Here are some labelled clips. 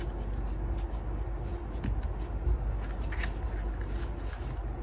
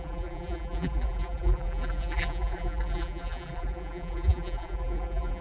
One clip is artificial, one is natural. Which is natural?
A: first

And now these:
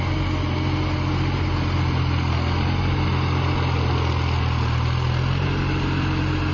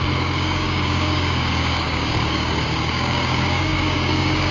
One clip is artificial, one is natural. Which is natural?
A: first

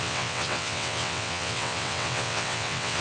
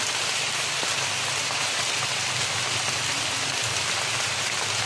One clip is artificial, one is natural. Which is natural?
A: second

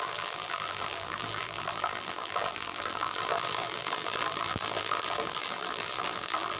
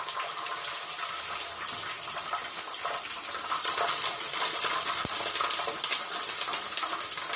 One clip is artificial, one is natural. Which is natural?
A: second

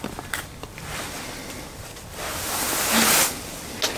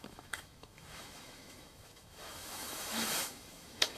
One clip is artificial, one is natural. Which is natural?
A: first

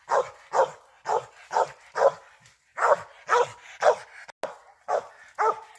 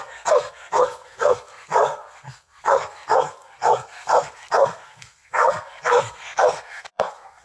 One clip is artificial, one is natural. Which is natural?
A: first